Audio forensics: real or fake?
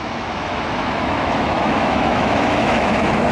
fake